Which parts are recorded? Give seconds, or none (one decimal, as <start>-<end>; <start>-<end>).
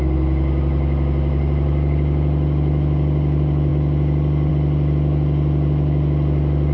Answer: 0.0-6.7